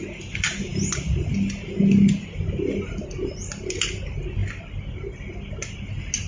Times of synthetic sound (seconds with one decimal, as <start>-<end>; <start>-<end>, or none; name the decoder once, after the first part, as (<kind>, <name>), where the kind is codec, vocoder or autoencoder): none